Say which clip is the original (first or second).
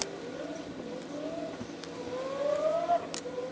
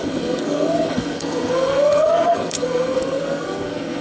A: first